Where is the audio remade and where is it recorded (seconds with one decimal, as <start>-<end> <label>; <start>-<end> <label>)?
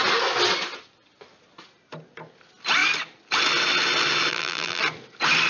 0.0-4.3 recorded; 4.3-4.8 remade; 4.8-5.5 recorded